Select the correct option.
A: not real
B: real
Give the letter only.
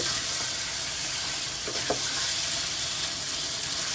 B